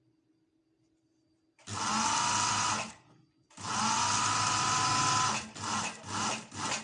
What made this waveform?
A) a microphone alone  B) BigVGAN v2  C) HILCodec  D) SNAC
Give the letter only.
A